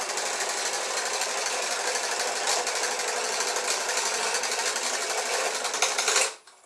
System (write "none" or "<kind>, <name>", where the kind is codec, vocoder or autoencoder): none